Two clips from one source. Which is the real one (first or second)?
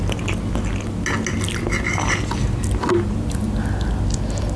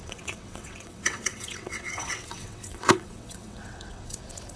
first